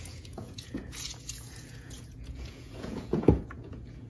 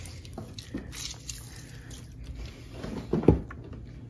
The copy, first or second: first